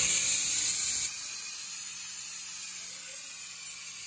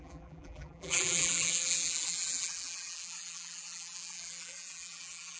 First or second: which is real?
first